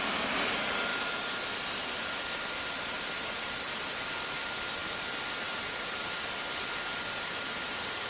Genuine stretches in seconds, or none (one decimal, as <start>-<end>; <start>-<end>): 0.0-0.9; 2.1-4.8; 7.5-8.1